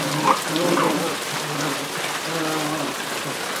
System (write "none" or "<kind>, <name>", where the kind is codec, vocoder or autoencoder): none